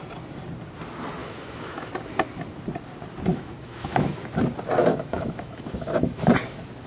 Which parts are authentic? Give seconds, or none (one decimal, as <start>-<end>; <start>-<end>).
0.0-1.2; 1.9-3.3; 4.2-4.8; 6.3-6.9